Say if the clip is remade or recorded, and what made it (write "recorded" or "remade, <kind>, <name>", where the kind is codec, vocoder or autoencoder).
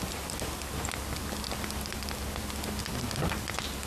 recorded